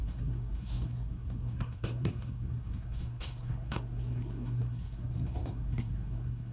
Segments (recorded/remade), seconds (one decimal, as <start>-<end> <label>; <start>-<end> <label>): 0.0-6.5 remade